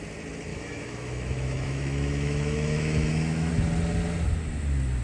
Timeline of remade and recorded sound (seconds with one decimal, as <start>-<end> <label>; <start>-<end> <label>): 0.0-0.5 recorded; 0.5-3.5 remade; 3.5-5.0 recorded